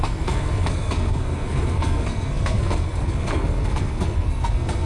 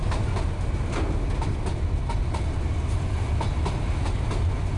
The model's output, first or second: first